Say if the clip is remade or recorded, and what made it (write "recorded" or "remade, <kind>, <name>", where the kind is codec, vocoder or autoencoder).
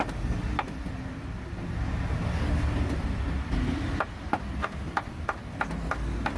recorded